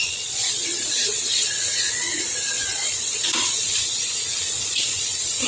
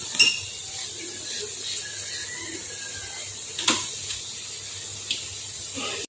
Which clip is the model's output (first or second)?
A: first